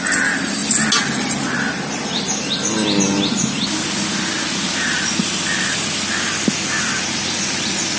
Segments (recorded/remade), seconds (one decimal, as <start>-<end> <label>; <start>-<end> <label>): 0.0-8.0 recorded